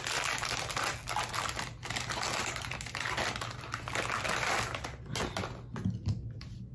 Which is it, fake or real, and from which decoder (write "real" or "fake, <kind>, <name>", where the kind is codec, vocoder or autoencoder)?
real